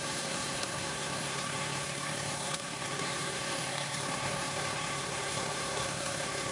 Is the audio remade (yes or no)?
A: yes